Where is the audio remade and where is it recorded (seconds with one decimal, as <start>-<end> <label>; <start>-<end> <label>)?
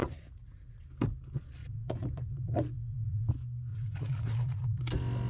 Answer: 0.0-0.8 remade; 0.8-1.6 recorded; 1.6-3.3 remade; 3.3-3.7 recorded; 3.7-4.8 remade; 4.8-5.3 recorded